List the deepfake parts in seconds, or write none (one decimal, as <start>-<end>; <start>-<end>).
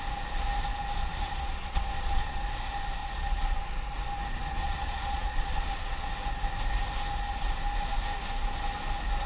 1.0-2.4; 3.0-3.7; 4.4-6.1